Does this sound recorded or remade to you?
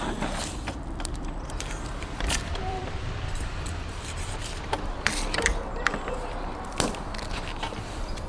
remade